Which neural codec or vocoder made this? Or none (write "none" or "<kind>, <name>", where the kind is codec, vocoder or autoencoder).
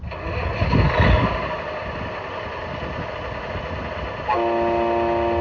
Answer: none